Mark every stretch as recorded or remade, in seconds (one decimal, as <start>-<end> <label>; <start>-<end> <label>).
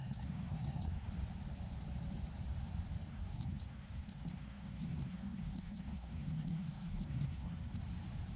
0.0-1.1 remade; 1.1-3.1 recorded; 3.1-7.8 remade; 7.8-8.4 recorded